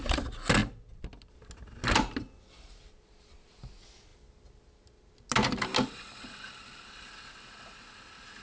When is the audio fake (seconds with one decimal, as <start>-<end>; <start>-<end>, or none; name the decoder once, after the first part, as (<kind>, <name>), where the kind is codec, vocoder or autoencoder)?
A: none